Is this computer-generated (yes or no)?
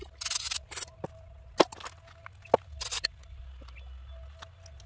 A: no